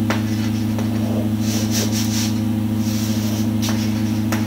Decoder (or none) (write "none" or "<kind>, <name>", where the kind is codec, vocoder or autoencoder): none